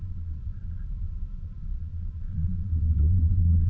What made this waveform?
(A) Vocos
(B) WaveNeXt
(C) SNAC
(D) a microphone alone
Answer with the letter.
A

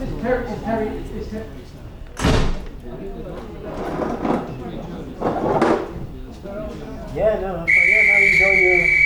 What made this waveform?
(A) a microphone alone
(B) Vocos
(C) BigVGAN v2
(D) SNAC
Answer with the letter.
A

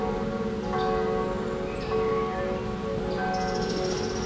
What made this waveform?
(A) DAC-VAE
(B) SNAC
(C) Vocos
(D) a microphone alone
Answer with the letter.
D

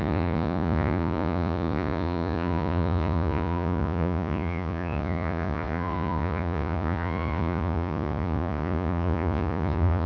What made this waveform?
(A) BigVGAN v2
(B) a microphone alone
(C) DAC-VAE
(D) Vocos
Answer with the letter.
D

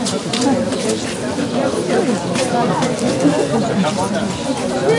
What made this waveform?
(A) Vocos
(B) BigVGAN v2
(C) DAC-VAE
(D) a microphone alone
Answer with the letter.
D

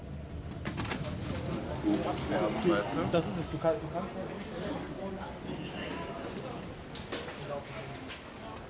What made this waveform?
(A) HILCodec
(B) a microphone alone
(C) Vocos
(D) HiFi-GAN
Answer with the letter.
B